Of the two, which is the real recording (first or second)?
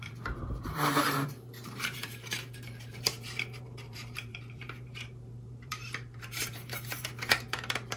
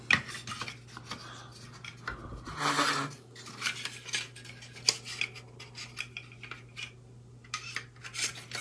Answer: second